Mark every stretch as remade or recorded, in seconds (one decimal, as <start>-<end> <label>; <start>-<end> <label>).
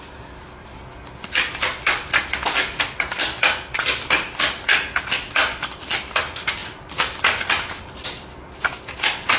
0.0-9.4 recorded